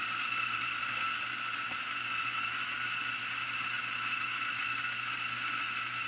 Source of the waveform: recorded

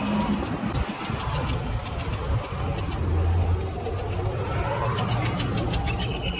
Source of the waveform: recorded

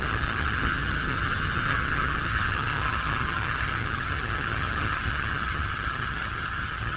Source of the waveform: remade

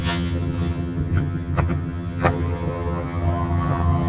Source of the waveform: remade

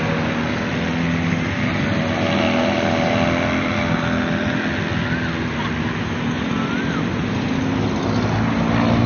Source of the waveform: recorded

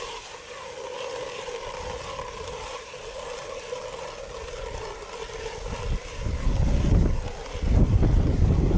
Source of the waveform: recorded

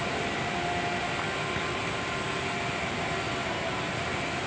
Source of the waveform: recorded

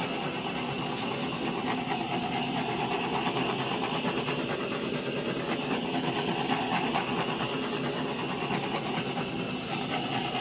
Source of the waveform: recorded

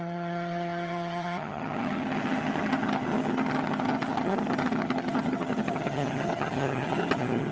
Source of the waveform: remade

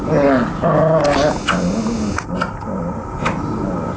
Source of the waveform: recorded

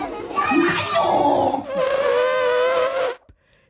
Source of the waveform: recorded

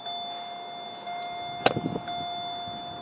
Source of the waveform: recorded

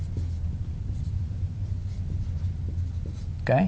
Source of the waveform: recorded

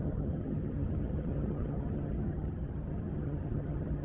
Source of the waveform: remade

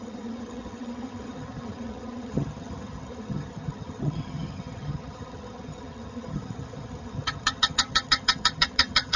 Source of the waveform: remade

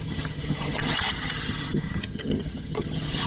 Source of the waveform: remade